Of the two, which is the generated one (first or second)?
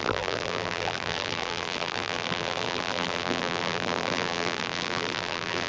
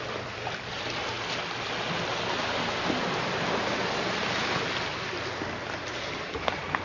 first